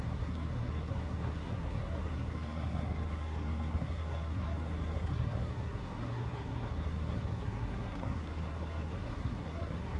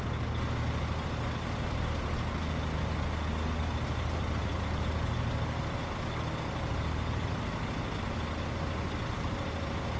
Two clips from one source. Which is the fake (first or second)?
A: first